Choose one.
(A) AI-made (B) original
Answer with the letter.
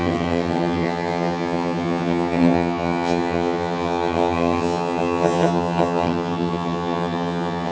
A